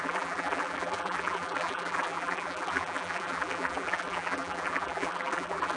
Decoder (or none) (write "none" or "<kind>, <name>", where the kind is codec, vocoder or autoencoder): vocoder, BigVGAN v2